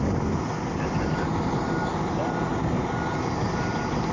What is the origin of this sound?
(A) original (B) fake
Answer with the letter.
A